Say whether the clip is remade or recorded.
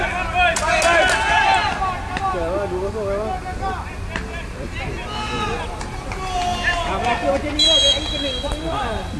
recorded